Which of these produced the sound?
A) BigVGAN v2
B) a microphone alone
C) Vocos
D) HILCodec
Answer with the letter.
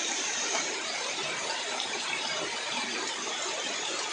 A